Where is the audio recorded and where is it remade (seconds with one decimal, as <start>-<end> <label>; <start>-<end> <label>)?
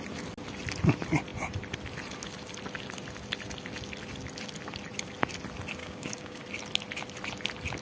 0.0-5.8 recorded; 5.8-6.4 remade; 6.4-7.8 recorded